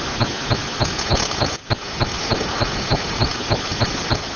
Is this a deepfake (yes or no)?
no